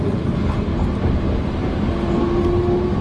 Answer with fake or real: real